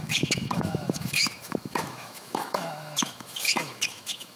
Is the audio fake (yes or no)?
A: yes